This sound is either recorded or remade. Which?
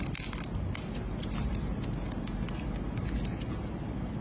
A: recorded